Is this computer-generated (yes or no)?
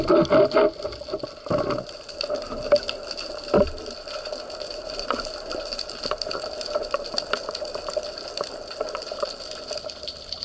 no